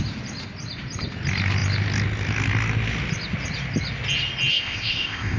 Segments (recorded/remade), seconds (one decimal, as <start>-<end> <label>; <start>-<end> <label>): 0.0-4.5 recorded; 4.5-5.4 remade